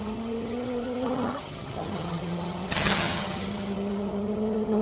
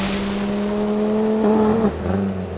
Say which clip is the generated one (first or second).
first